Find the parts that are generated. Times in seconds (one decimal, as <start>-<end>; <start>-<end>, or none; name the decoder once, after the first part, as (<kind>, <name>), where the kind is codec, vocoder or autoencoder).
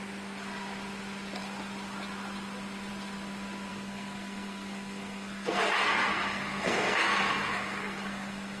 3.7-8.6 (codec, SNAC)